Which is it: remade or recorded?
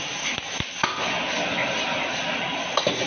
recorded